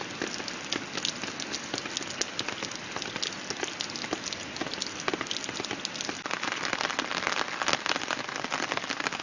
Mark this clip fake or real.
real